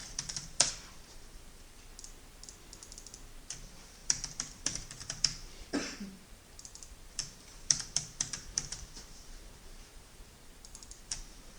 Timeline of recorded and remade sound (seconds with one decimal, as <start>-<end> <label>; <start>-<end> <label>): 0.0-1.9 remade; 1.9-3.4 recorded; 3.4-11.6 remade